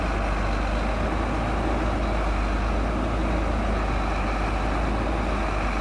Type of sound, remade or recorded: recorded